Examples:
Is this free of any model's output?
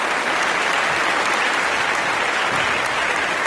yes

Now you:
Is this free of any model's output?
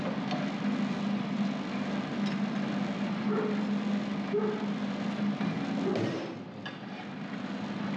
yes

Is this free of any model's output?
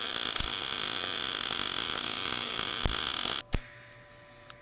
yes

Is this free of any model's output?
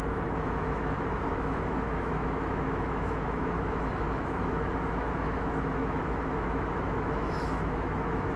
no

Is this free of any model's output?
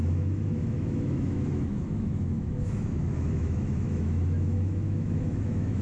no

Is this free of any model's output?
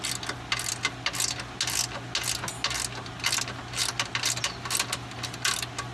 yes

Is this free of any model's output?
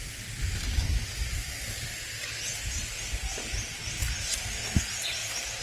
yes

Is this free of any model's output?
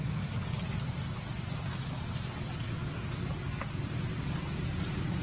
yes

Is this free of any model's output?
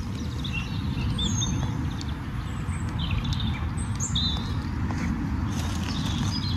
yes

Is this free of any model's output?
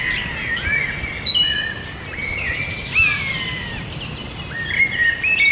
yes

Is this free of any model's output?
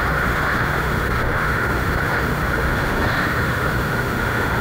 no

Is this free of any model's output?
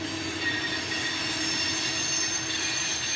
yes